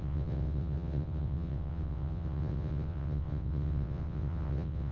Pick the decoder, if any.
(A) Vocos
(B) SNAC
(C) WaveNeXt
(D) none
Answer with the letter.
C